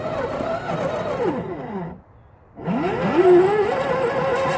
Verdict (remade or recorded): recorded